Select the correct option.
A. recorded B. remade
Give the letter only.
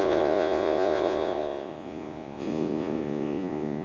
B